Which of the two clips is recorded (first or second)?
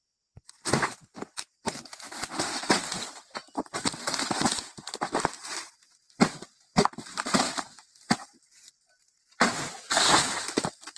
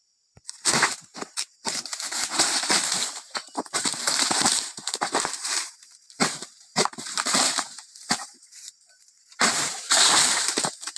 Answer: first